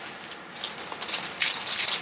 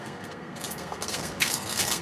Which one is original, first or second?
first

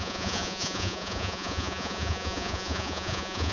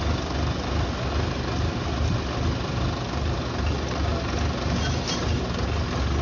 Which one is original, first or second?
second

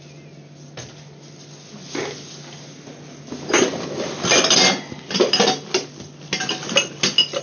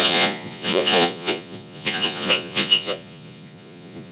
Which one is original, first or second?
first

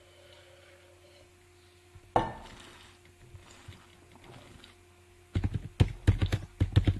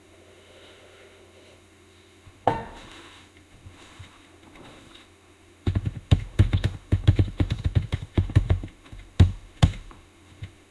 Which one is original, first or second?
first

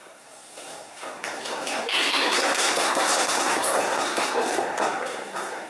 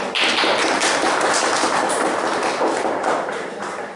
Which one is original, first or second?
second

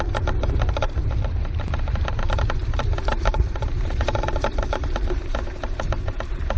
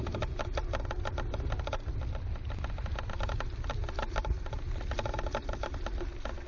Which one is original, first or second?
second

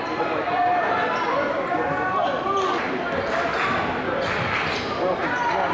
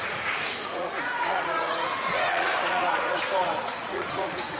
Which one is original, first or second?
first